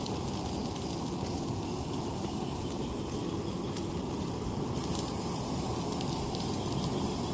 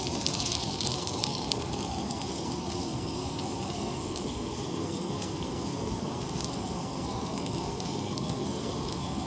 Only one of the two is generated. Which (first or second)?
second